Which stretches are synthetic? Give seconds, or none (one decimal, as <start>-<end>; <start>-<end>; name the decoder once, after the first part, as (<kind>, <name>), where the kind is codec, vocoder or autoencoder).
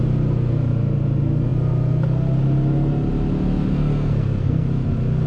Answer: 3.7-4.7 (codec, SNAC)